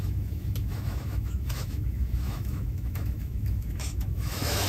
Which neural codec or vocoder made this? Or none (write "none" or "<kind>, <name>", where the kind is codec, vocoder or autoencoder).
autoencoder, DAC-VAE